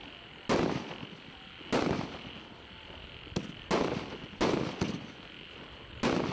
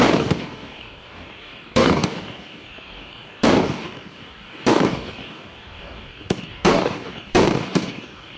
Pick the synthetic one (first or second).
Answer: second